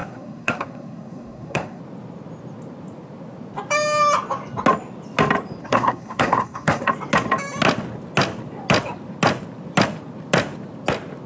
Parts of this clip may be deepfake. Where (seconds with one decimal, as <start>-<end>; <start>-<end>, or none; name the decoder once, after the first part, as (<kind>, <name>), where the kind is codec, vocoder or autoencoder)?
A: 0.0-1.8 (codec, SNAC); 5.6-6.9